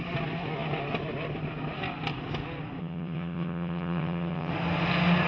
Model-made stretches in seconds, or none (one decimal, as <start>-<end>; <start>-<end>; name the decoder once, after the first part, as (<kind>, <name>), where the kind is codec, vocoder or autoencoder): 2.8-4.5 (vocoder, HiFi-GAN)